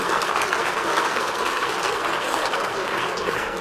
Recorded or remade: remade